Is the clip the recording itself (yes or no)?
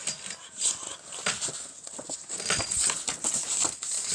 yes